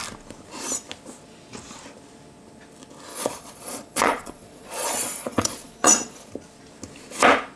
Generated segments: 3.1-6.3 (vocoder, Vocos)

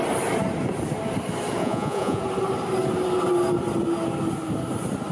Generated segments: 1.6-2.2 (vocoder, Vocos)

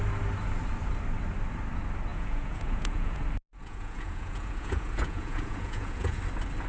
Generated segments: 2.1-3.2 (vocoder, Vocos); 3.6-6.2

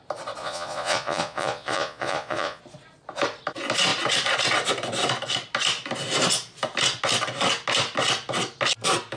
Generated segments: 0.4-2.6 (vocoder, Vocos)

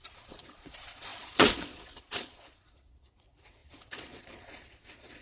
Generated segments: 0.0-5.2 (vocoder, Vocos)

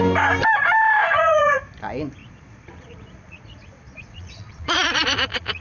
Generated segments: 1.0-1.6 (vocoder, Vocos); 2.2-5.6

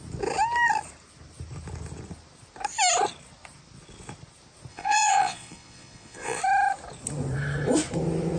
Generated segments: 4.7-6.4 (vocoder, Vocos)

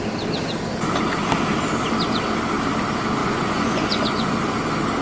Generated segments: 3.2-4.3 (vocoder, Vocos)